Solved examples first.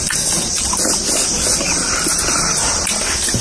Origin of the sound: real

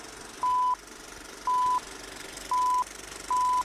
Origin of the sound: real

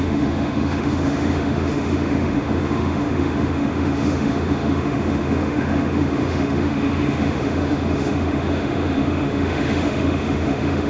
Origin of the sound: fake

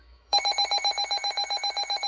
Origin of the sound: fake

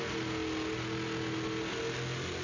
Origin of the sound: real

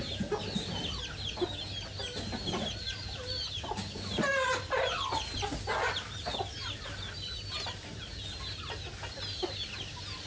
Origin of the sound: real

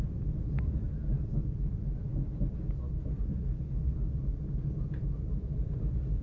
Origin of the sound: real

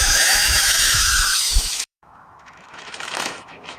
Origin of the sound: fake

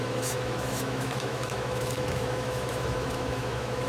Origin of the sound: fake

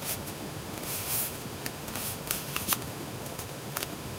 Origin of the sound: fake